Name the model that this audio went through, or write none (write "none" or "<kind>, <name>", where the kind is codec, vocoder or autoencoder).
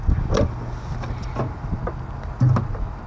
none